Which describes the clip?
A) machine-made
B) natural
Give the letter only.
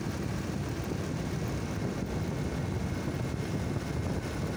B